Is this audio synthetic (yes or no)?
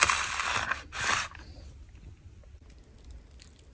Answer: no